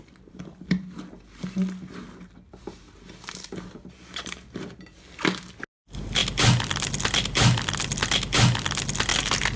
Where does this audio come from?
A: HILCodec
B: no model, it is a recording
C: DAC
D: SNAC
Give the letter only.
B